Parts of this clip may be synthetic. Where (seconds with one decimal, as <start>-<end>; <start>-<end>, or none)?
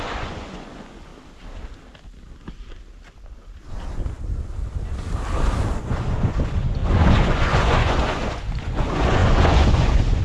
0.0-1.1; 5.8-10.2